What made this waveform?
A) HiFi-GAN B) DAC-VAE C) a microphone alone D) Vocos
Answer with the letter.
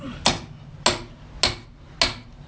C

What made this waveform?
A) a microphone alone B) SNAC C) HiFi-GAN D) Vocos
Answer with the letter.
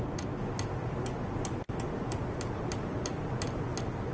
A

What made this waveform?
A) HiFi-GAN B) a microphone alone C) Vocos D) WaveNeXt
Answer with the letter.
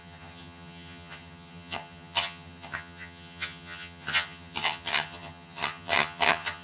A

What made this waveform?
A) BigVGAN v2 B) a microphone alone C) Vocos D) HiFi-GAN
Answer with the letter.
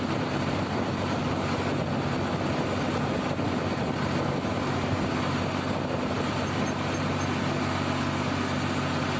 B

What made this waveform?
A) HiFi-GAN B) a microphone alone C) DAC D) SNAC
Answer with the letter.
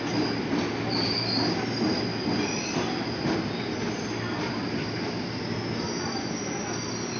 B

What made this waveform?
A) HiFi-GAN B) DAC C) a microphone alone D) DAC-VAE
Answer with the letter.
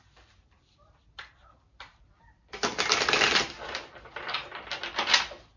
C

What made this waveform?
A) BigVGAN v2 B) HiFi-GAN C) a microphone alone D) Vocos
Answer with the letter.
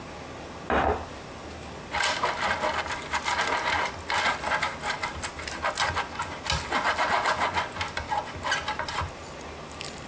C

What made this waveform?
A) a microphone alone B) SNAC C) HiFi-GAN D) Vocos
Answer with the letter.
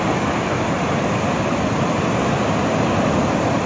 A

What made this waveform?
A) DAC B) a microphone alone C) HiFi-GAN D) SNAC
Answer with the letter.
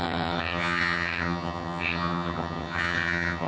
C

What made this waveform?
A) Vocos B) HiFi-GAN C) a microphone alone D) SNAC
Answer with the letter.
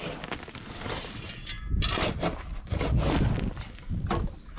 C